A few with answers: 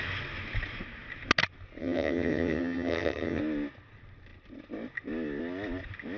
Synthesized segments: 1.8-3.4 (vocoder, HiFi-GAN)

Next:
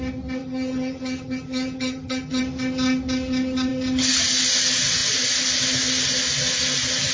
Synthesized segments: 0.4-2.4 (vocoder, HiFi-GAN)

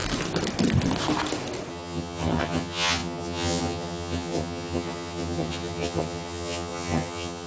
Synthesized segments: 1.7-7.5 (vocoder, HiFi-GAN)

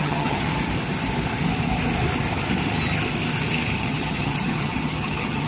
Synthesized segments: 0.0-0.5 (vocoder, HiFi-GAN); 3.8-5.5